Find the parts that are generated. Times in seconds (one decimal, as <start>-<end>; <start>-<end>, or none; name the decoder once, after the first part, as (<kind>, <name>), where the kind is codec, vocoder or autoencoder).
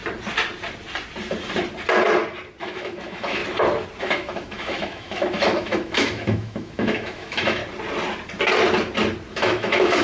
2.6-3.4 (autoencoder, DAC-VAE); 4.0-7.6; 9.3-10.0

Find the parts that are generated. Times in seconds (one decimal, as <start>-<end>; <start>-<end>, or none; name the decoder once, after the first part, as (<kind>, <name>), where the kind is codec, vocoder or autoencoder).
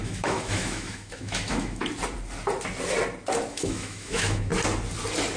0.0-1.8 (autoencoder, DAC-VAE); 3.5-4.5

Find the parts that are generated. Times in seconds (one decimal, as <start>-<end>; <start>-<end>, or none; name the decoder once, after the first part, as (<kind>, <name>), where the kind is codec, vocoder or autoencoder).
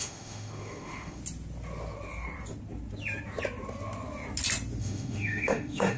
0.0-1.2 (autoencoder, DAC-VAE); 4.8-6.0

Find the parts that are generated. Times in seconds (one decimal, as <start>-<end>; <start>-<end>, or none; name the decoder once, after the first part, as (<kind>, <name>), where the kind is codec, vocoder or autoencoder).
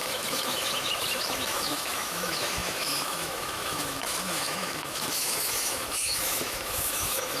0.0-7.4 (autoencoder, DAC-VAE)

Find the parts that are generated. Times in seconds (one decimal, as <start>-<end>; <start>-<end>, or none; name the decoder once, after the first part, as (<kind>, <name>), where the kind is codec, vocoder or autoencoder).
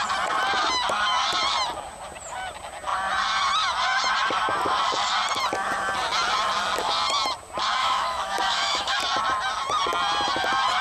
7.8-9.0 (autoencoder, DAC-VAE)